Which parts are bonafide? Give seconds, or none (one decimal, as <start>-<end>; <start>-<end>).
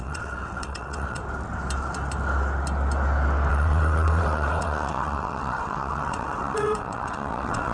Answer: 1.2-3.5